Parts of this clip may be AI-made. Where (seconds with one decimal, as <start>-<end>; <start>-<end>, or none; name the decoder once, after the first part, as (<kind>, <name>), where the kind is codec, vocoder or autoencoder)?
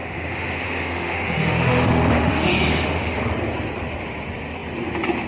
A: 0.0-3.2 (autoencoder, DAC-VAE)